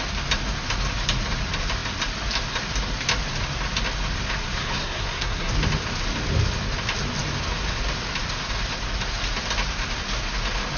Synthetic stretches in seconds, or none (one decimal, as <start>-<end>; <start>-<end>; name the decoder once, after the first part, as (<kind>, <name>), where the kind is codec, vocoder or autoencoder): 4.6-5.5 (codec, SNAC)